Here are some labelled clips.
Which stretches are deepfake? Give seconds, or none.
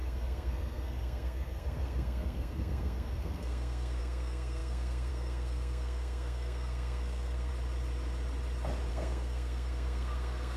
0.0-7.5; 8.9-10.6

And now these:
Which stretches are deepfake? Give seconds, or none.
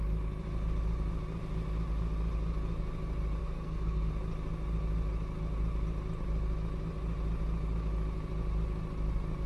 3.4-4.1